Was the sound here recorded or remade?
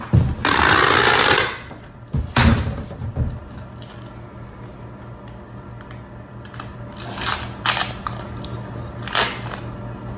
recorded